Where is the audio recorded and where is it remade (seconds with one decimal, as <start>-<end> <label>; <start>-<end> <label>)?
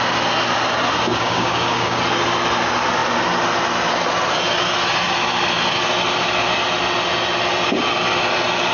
0.0-1.1 recorded; 1.1-2.0 remade; 2.0-8.7 recorded